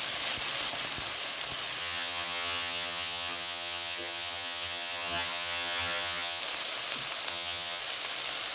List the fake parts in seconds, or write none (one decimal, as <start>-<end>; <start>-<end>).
1.8-6.4; 7.3-7.8